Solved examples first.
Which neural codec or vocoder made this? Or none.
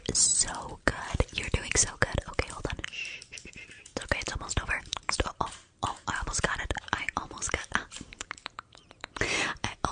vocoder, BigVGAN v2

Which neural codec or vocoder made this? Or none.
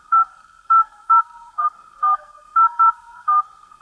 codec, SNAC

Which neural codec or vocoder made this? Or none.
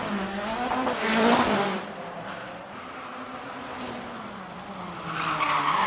none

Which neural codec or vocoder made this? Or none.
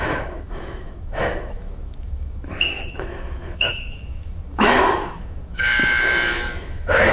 autoencoder, DAC-VAE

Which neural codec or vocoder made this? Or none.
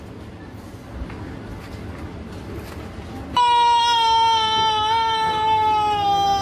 none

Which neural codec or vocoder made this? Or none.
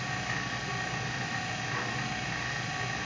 none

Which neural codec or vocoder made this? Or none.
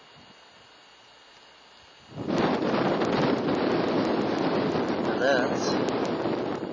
none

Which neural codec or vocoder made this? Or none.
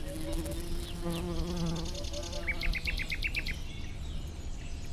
none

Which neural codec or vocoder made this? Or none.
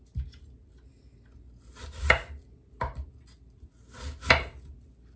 none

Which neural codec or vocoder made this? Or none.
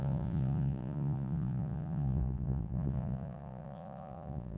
vocoder, Vocos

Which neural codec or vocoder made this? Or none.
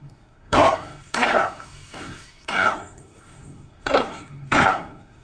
codec, SNAC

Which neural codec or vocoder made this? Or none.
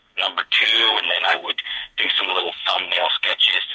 codec, SNAC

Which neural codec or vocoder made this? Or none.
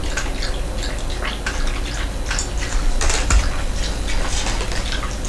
none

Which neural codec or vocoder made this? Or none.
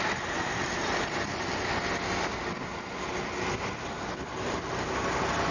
none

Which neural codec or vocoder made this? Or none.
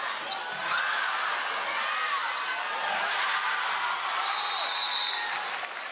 none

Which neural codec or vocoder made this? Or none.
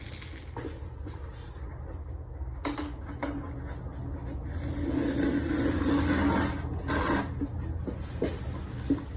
none